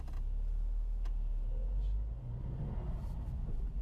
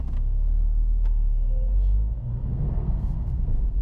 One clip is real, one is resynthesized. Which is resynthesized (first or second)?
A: second